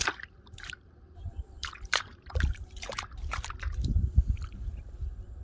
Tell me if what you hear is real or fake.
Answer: fake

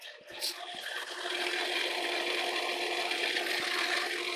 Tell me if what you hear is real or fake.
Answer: real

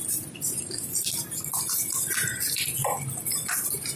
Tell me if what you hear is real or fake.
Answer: real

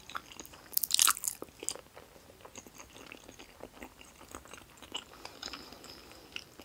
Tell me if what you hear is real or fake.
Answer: real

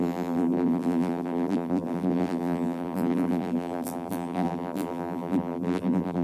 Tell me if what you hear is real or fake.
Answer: fake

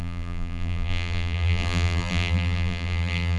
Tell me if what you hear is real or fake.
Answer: fake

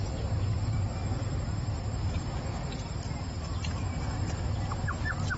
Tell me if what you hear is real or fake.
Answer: real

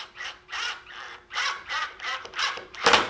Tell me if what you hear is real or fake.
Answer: fake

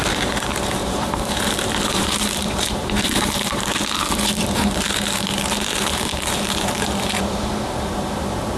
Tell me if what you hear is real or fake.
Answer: fake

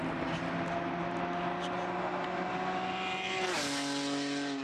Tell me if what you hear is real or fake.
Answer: real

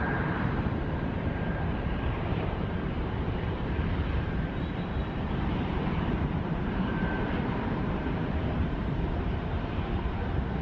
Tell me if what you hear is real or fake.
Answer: fake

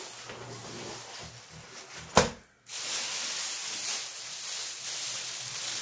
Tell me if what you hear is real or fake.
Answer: real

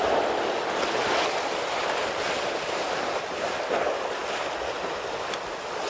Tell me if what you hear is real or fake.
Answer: real